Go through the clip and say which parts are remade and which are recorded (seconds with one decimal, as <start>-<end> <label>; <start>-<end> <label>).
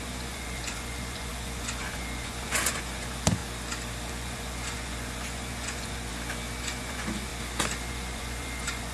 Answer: 0.0-3.4 remade; 3.4-4.1 recorded; 4.1-6.1 remade; 6.1-6.6 recorded; 6.6-7.3 remade; 7.3-7.9 recorded; 7.9-8.9 remade